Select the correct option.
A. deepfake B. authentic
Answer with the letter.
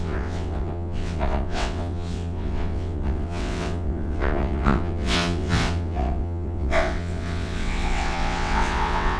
A